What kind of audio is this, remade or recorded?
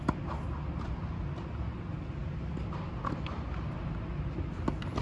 recorded